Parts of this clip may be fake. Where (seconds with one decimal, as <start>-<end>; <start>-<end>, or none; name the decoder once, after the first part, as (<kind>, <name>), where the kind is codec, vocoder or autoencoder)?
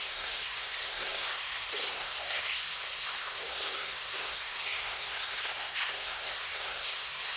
0.0-7.4 (codec, SNAC)